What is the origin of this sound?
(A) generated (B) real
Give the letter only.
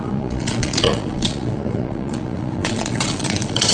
A